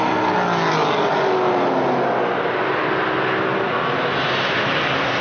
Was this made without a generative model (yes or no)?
yes